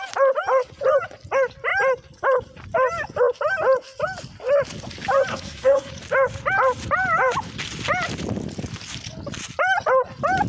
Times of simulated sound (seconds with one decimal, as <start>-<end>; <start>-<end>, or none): 5.3-5.9